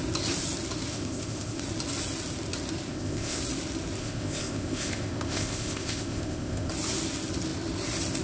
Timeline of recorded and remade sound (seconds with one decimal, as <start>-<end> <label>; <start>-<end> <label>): 0.0-0.9 recorded; 0.9-1.6 remade; 1.6-2.9 recorded; 2.9-3.4 remade; 3.4-4.0 recorded; 4.0-6.7 remade; 6.7-8.2 recorded